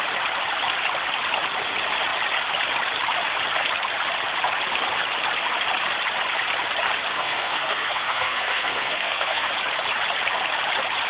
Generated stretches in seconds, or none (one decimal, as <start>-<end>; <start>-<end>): 7.1-9.5